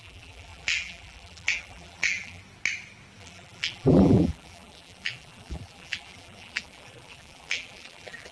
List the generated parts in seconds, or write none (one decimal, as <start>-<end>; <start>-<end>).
0.0-2.4; 3.2-8.3